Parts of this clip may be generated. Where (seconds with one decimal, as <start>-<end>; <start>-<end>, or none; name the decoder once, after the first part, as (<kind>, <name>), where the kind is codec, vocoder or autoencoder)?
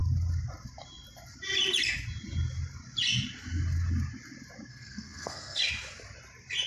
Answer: 4.7-5.6 (codec, SNAC)